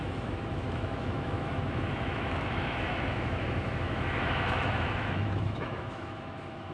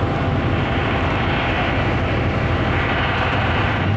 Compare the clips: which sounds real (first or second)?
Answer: second